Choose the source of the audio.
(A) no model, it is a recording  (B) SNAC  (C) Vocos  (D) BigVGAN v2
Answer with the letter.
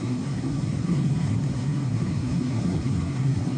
B